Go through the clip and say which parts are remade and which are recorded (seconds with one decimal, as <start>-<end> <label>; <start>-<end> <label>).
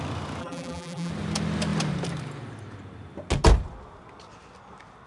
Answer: 0.0-0.4 recorded; 0.4-1.1 remade; 1.1-5.1 recorded